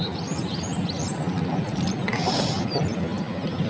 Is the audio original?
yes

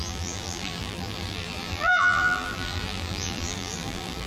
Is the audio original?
no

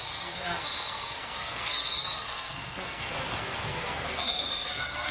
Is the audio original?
no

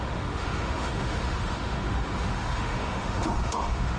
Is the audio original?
no